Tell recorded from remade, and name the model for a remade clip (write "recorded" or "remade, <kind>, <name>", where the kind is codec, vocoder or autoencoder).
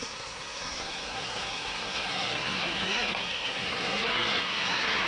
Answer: remade, codec, SNAC